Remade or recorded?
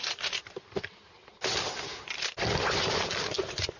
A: recorded